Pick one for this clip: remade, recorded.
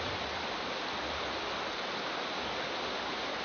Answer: recorded